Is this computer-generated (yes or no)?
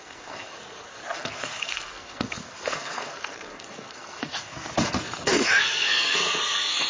yes